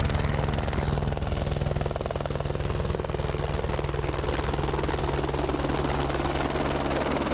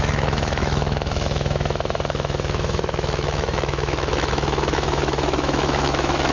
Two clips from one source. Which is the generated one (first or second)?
second